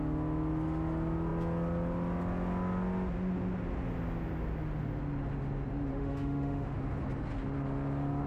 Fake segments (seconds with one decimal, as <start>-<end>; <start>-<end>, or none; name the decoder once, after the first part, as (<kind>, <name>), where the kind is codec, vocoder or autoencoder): 5.9-6.8 (autoencoder, DAC-VAE)